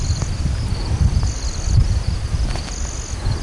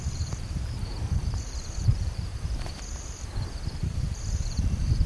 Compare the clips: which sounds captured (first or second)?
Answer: first